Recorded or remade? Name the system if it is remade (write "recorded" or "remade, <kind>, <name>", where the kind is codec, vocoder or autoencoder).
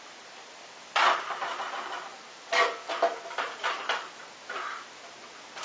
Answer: recorded